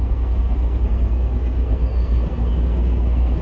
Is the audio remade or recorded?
remade